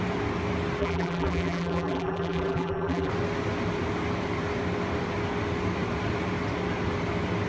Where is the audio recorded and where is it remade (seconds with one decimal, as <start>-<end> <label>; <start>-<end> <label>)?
0.0-0.8 recorded; 0.8-3.1 remade; 3.1-7.5 recorded